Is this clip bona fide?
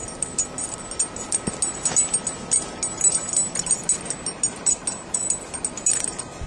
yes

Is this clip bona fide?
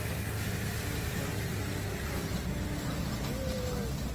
yes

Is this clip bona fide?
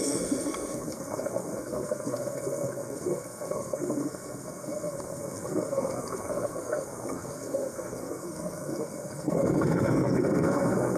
no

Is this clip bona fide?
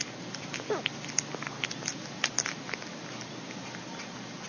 yes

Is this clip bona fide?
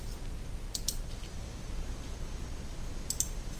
yes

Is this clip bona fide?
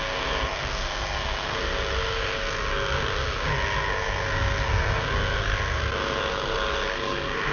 no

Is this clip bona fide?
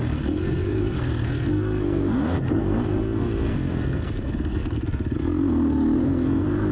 no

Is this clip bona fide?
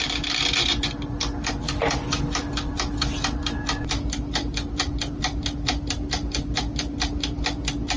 yes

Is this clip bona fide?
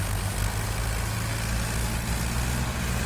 yes